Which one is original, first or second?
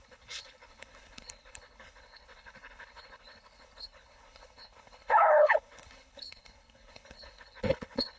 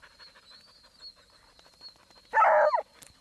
second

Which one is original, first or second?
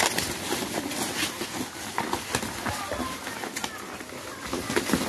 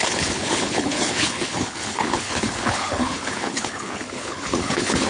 first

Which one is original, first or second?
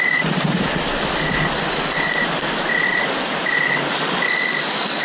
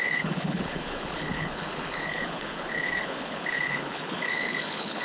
first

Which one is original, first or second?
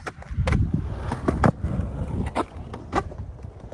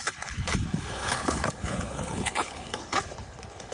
first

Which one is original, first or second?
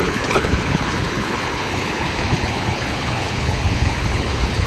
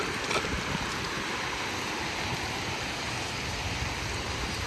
second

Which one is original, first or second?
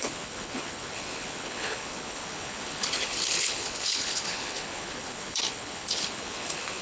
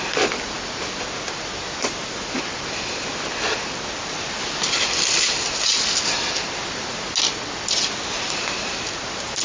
second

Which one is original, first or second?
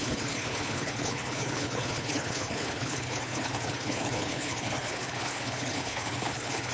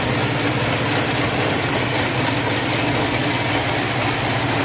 second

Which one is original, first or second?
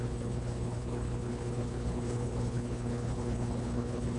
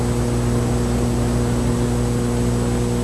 second